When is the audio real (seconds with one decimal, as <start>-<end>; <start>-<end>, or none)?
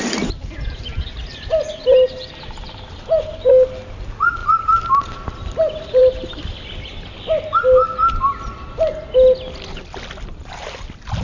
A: 0.0-11.2